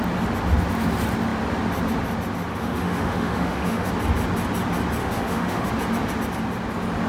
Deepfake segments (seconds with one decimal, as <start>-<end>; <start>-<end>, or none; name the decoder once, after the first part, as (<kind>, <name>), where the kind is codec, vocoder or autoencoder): 2.5-3.9 (autoencoder, DAC-VAE); 5.0-5.7